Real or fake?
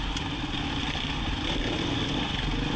real